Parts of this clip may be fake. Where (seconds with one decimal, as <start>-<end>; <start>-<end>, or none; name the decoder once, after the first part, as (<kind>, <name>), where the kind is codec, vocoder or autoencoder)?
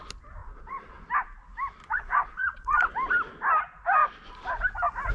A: 0.4-1.0 (vocoder, Vocos); 1.8-2.9